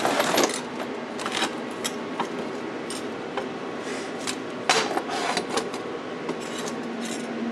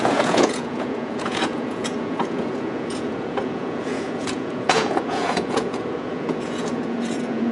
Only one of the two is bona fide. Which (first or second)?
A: first